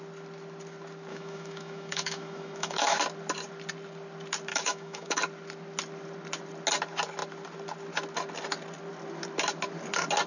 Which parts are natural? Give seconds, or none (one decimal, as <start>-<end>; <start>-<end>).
0.0-1.1; 3.0-4.5; 5.2-10.3

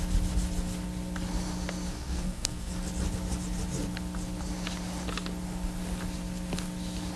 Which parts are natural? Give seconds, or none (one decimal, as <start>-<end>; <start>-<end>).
0.0-1.9; 2.7-7.2

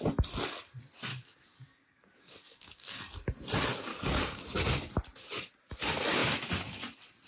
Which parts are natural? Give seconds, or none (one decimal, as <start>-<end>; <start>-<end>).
0.0-1.1; 3.0-3.9; 4.4-7.3

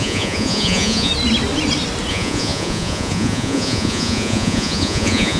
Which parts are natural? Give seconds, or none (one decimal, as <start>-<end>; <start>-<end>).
1.1-2.1

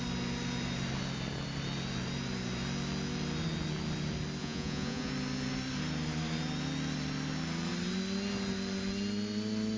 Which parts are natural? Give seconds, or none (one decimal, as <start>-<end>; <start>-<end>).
0.0-4.4; 5.1-9.8

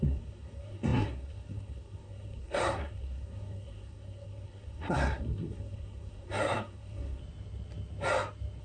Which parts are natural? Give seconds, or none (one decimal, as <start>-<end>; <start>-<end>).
7.2-8.6